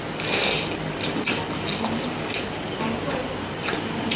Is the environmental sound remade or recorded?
recorded